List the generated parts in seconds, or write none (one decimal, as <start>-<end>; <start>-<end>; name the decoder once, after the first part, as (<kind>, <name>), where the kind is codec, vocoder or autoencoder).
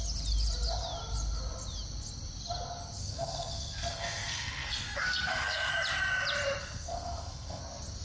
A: 3.0-5.7 (codec, SNAC); 6.6-7.6